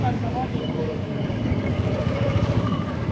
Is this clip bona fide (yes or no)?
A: no